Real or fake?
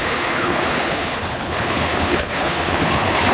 fake